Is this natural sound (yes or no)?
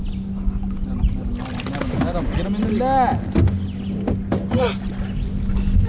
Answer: yes